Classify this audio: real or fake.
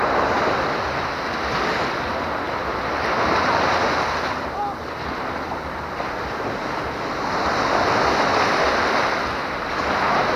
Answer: real